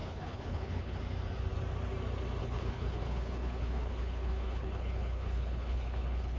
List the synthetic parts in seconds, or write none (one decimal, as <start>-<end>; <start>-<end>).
0.0-1.0; 2.4-6.4